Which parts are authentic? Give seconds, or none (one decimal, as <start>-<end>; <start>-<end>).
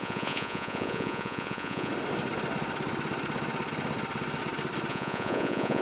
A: 1.9-4.9